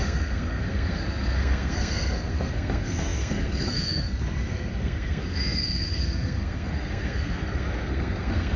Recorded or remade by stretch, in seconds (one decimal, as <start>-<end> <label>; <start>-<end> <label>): 0.0-8.6 remade